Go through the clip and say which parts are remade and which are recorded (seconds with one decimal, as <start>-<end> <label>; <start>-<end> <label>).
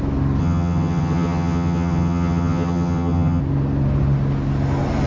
0.0-0.4 recorded; 0.4-3.4 remade; 3.4-5.1 recorded